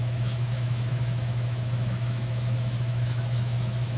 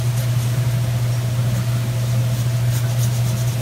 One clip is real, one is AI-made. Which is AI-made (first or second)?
first